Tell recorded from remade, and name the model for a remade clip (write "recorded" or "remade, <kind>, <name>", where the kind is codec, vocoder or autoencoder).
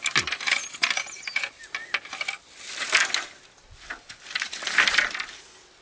recorded